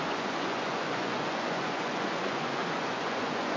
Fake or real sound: fake